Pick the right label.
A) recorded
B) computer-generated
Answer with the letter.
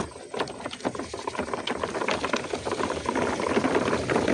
A